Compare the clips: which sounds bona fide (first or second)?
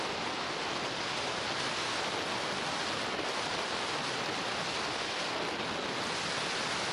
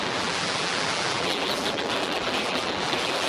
first